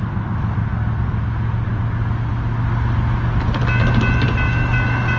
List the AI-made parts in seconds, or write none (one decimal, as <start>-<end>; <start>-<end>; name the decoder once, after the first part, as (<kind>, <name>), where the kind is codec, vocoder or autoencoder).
none